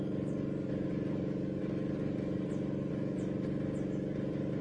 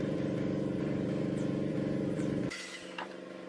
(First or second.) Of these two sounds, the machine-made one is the second